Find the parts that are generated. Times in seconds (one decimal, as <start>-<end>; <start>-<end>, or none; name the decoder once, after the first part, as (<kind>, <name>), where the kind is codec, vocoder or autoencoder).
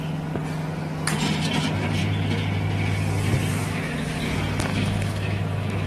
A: 3.6-4.2 (autoencoder, DAC-VAE); 4.7-5.9